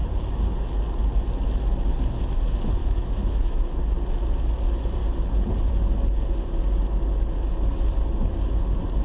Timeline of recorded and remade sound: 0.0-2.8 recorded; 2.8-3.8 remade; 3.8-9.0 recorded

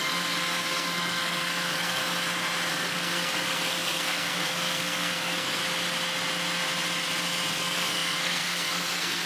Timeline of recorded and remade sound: 0.0-2.0 remade; 2.0-2.7 recorded; 2.7-5.6 remade; 5.6-7.5 recorded; 7.5-9.3 remade

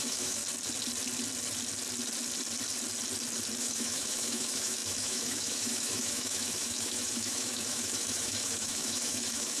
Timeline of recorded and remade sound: 0.0-0.4 remade; 0.4-3.6 recorded; 3.6-9.6 remade

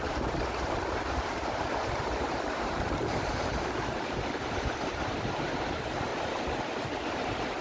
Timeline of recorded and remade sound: 0.0-6.1 remade; 6.1-7.6 recorded